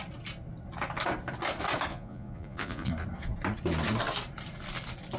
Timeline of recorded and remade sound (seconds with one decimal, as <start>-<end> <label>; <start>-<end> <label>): 0.0-1.9 recorded; 1.9-2.9 remade; 2.9-5.2 recorded